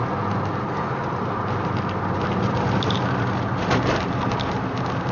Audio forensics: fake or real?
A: real